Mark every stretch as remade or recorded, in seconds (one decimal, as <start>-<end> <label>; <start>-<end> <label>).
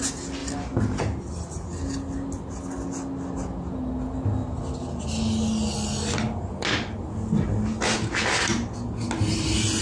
0.0-9.8 recorded